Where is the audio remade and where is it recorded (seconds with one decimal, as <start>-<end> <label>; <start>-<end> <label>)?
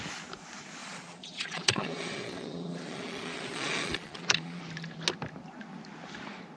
0.0-0.8 recorded; 0.8-4.6 remade; 4.6-6.6 recorded